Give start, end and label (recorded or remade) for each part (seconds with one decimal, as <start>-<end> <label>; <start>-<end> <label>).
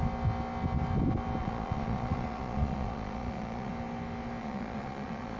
0.0-1.4 recorded; 1.4-3.7 remade; 3.7-4.4 recorded; 4.4-5.4 remade